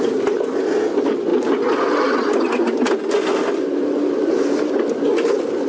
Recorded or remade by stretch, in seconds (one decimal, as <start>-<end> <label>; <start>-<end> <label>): 0.0-5.7 recorded